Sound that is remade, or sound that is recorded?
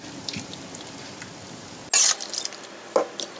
recorded